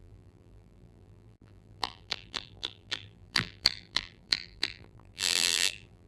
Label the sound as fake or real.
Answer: fake